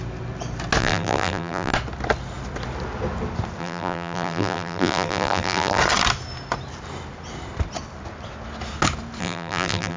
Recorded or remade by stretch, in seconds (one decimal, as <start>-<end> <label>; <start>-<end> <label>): 0.0-0.8 recorded; 0.8-1.7 remade; 1.7-3.6 recorded; 3.6-5.8 remade; 5.8-9.2 recorded; 9.2-10.0 remade

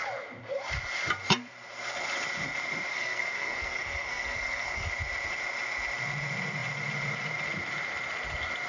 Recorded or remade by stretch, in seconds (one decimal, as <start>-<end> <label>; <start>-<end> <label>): 0.0-2.9 recorded; 2.9-4.9 remade; 4.9-8.7 recorded

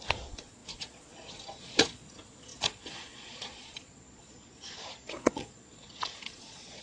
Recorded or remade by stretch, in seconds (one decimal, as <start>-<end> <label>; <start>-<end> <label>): 0.0-6.8 remade